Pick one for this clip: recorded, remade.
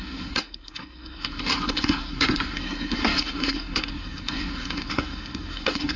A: remade